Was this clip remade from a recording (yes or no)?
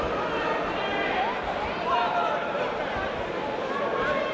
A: no